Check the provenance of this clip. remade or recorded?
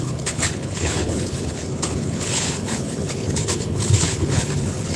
remade